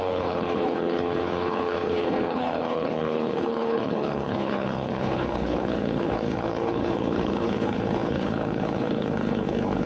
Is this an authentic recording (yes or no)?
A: no